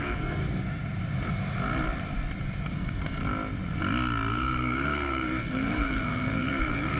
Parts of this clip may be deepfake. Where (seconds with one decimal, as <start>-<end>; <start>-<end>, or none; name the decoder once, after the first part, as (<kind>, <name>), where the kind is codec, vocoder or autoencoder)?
0.0-0.4 (codec, SNAC); 2.7-3.2; 4.3-7.0

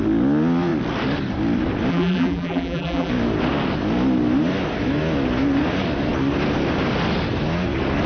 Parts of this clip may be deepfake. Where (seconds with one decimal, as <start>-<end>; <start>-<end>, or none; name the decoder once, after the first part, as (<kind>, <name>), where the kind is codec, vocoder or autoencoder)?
1.9-3.1 (vocoder, BigVGAN v2)

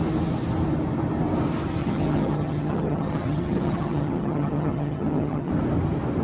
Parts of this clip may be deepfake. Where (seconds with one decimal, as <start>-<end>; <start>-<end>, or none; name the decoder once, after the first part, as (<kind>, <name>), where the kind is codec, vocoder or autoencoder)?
1.8-5.5 (vocoder, HiFi-GAN)

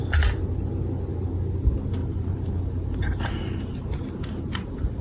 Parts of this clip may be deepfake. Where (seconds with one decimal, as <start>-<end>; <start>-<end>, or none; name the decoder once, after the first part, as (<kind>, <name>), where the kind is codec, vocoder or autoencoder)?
2.0-5.0 (vocoder, BigVGAN v2)

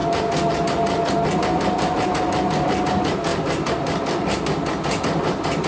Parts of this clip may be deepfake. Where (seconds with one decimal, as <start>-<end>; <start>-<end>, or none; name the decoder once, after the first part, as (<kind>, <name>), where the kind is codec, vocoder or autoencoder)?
none